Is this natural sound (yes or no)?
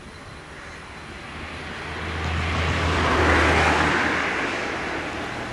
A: yes